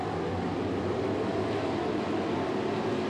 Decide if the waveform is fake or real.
real